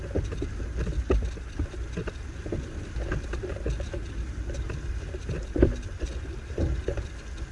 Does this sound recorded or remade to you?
recorded